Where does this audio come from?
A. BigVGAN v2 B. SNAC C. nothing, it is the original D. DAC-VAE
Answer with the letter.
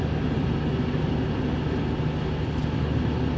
C